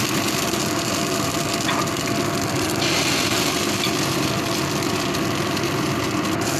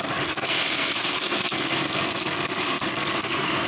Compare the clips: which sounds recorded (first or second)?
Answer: first